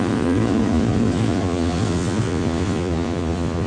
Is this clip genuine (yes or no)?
no